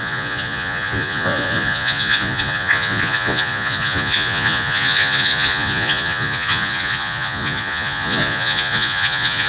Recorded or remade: remade